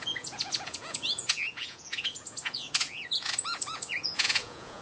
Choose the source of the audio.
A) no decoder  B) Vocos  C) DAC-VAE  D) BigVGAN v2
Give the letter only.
B